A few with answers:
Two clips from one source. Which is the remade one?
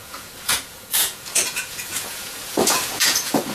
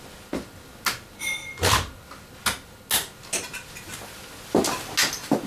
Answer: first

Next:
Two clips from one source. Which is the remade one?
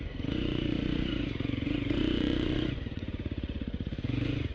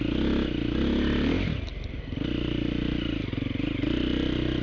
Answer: first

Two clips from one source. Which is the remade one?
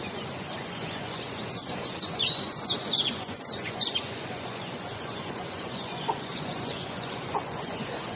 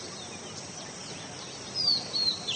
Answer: first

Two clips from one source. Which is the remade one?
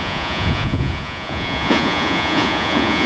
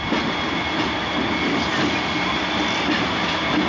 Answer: first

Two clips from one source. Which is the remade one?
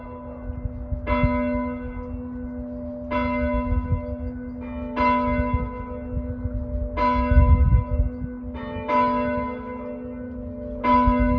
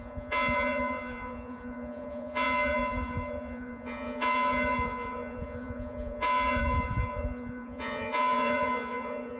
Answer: second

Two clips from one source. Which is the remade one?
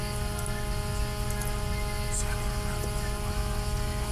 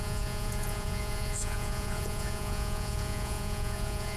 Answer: second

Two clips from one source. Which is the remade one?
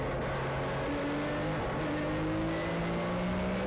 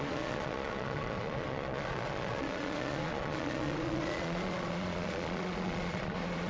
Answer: second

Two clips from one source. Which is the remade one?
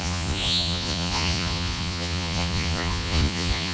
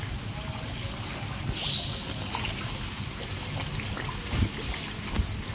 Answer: first